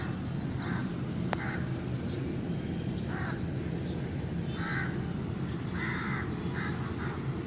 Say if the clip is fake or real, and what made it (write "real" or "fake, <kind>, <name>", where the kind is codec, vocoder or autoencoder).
real